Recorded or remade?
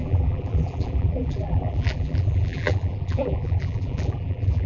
remade